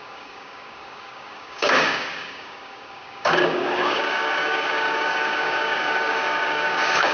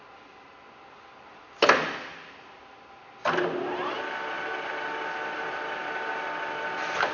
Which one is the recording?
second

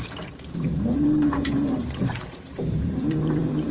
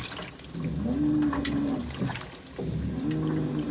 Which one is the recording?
second